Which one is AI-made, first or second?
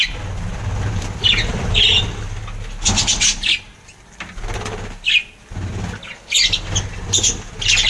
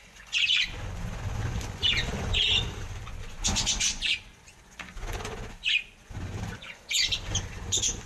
second